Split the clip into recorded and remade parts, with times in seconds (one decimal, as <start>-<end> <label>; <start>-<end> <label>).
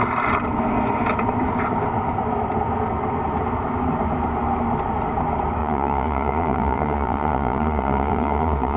0.0-5.6 recorded; 5.6-8.8 remade